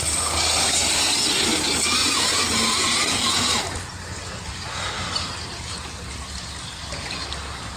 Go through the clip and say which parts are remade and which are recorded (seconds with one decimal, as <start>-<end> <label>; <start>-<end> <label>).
0.0-2.0 recorded; 2.0-3.6 remade; 3.6-7.8 recorded